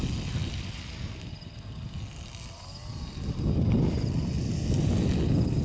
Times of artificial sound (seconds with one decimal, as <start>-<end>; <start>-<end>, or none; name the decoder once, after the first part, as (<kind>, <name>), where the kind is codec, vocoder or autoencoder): none